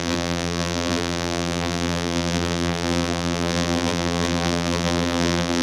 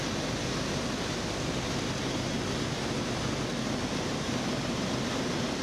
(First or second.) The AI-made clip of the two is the first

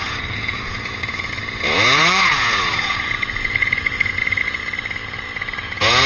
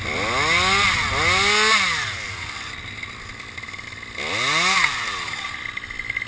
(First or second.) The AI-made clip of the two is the first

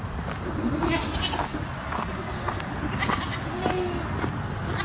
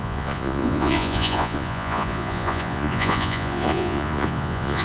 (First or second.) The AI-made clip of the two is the second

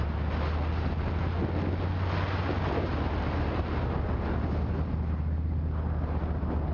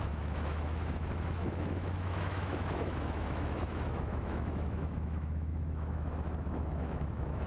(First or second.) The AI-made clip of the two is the second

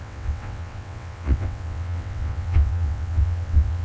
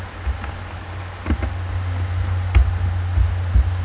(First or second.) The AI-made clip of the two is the first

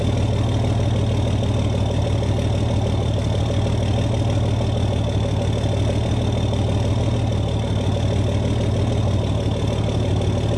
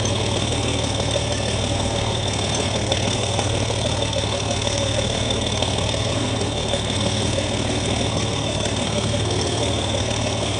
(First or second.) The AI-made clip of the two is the second